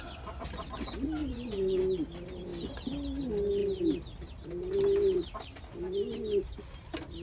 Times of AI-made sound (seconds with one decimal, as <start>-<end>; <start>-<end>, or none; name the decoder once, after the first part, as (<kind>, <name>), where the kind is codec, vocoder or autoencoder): 1.2-1.8 (vocoder, Vocos)